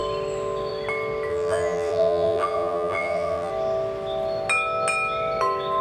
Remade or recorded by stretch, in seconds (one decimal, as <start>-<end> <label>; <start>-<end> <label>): 0.0-1.3 recorded; 1.3-3.5 remade; 3.5-5.8 recorded